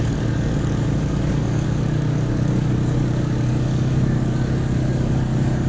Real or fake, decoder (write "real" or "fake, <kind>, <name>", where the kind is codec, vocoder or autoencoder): fake, codec, DAC